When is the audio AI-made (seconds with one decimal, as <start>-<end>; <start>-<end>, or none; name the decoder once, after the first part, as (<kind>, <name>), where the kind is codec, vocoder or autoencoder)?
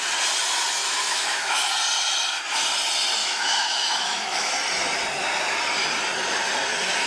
0.8-1.7 (autoencoder, DAC-VAE); 3.2-4.5